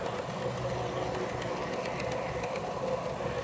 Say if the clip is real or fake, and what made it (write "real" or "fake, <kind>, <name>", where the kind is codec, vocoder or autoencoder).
real